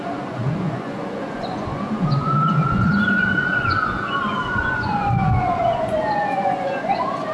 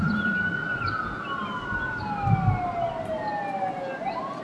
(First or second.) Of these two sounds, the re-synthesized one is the first